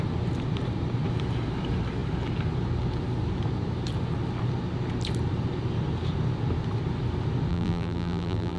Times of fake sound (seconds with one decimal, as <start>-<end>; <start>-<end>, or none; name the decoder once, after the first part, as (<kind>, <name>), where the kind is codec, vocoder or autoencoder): 7.5-8.6 (vocoder, BigVGAN v2)